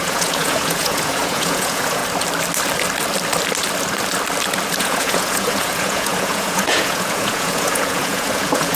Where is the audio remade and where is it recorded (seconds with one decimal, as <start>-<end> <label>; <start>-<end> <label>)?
0.0-2.0 remade; 2.0-4.8 recorded; 4.8-8.8 remade